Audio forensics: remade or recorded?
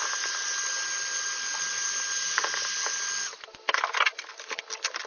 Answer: recorded